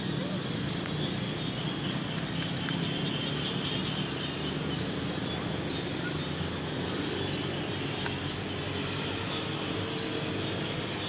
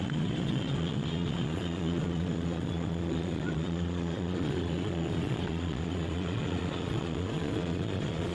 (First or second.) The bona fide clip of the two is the first